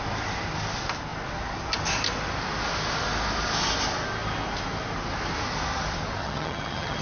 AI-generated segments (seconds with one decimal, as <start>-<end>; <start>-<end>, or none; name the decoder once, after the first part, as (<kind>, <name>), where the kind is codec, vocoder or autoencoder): 6.2-7.0 (vocoder, HiFi-GAN)